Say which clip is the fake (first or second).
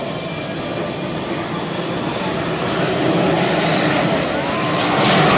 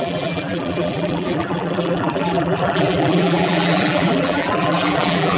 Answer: second